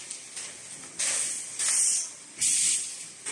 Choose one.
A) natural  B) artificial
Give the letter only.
A